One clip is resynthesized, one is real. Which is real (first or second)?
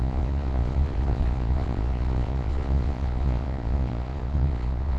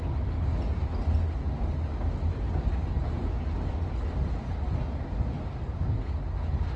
second